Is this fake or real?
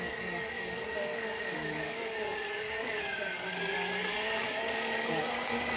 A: fake